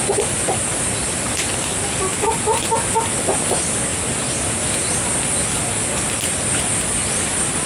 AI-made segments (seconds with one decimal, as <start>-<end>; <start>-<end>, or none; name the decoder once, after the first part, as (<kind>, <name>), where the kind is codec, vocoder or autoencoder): none

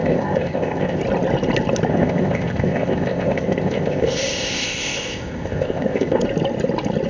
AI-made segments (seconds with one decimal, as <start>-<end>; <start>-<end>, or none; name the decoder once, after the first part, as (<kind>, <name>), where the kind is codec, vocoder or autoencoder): 0.0-1.0 (codec, ZipCodec); 1.9-6.2

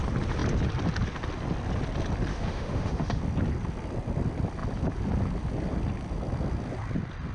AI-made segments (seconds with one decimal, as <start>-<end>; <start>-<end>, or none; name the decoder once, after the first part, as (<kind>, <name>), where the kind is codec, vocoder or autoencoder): 2.3-3.2 (autoencoder, DAC-VAE)

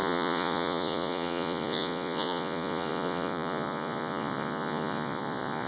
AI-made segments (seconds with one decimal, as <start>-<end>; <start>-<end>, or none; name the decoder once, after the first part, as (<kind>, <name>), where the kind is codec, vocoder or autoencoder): 0.0-5.7 (vocoder, Vocos)